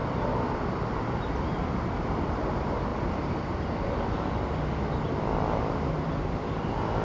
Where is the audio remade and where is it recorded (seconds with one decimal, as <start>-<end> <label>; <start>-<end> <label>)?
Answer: 0.0-2.4 remade; 2.4-2.9 recorded; 2.9-4.4 remade; 4.4-7.0 recorded